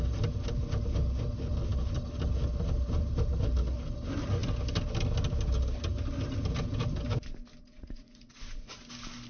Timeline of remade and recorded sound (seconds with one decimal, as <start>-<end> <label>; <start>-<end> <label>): 0.0-7.6 recorded; 7.6-8.8 remade; 8.8-9.3 recorded